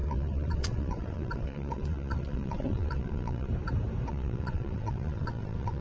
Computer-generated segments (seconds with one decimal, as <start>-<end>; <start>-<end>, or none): 0.0-3.5; 4.1-5.8